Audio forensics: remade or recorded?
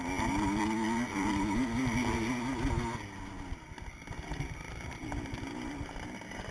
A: recorded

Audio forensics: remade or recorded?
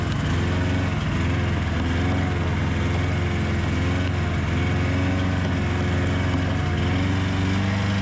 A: recorded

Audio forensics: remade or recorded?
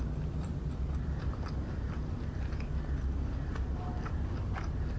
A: recorded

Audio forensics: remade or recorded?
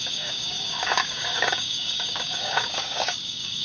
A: remade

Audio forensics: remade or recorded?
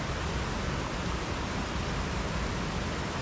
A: recorded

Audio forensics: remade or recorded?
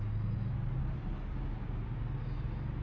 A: recorded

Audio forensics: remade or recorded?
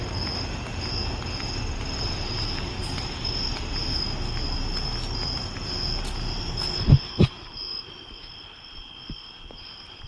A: recorded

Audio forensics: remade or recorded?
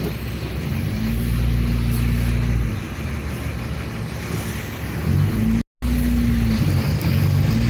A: recorded